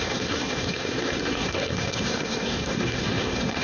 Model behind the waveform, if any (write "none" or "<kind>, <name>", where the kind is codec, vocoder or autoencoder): codec, SNAC